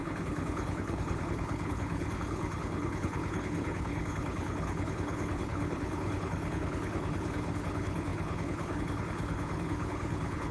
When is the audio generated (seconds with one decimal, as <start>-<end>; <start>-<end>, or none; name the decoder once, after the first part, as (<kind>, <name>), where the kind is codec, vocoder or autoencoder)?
0.0-10.5 (codec, HILCodec)